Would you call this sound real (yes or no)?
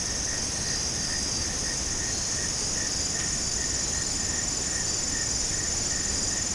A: yes